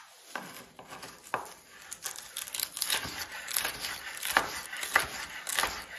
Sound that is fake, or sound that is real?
real